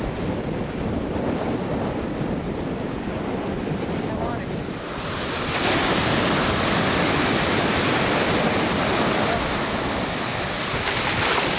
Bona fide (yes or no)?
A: yes